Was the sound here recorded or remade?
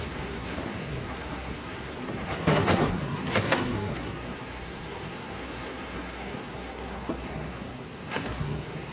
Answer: remade